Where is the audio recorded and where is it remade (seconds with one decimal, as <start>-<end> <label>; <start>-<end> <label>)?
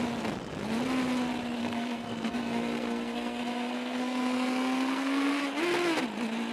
0.0-1.6 recorded; 1.6-5.4 remade; 5.4-6.5 recorded